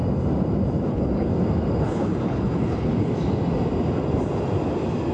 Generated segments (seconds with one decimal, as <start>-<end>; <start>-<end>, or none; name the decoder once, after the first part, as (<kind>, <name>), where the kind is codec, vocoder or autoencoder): 0.9-1.3 (codec, HILCodec); 1.9-2.9